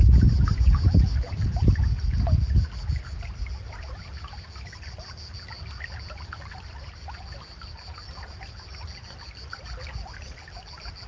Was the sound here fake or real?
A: real